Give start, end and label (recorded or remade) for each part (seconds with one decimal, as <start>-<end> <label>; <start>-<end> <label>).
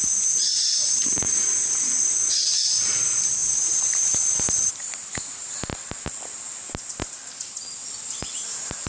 0.0-5.7 remade; 5.7-8.9 recorded